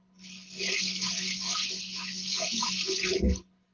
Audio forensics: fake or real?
fake